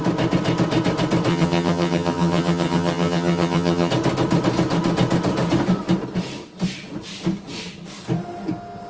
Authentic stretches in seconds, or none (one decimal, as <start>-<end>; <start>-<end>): 0.0-1.3; 3.9-8.9